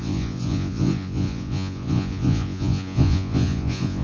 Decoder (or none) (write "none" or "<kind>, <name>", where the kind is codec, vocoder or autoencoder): vocoder, Vocos